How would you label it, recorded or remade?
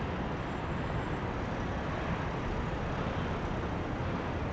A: recorded